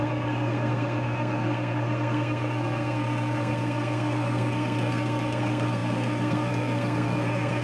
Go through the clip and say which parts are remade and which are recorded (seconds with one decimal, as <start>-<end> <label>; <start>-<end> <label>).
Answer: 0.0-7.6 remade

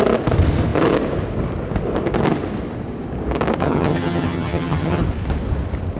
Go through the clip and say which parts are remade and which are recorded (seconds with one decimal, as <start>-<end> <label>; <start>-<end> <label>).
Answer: 0.0-3.6 recorded; 3.6-5.0 remade; 5.0-6.0 recorded

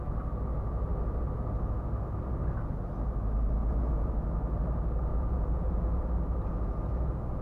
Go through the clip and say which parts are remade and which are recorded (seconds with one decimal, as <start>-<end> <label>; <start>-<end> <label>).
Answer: 0.0-3.6 recorded; 3.6-4.1 remade; 4.1-5.1 recorded; 5.1-6.0 remade; 6.0-7.4 recorded

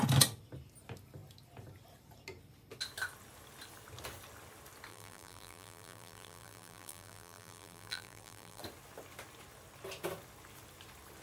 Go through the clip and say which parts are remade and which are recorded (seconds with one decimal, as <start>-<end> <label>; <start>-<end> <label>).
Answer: 0.0-4.9 recorded; 4.9-8.6 remade; 8.6-11.2 recorded